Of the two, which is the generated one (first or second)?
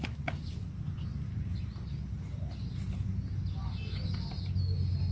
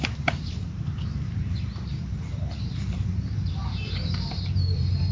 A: second